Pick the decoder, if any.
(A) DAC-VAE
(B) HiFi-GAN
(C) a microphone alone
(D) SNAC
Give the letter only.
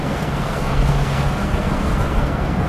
D